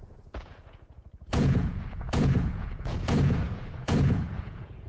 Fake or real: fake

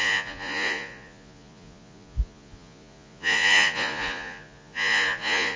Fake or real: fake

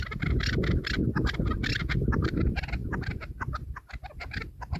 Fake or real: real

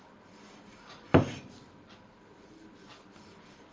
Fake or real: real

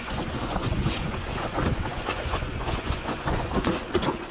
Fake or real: fake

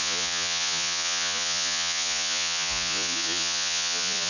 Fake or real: fake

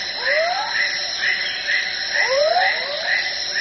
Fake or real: real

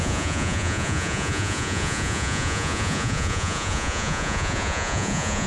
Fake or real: fake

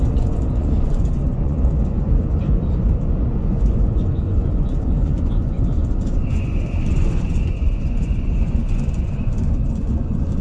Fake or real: fake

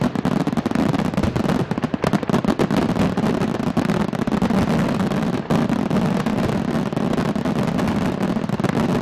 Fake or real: real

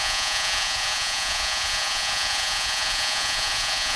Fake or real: fake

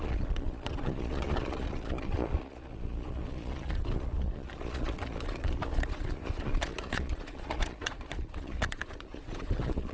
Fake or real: fake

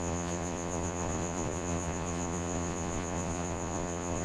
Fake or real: fake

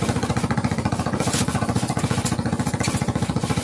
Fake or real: fake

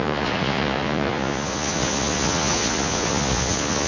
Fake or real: fake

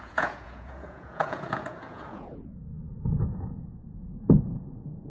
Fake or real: fake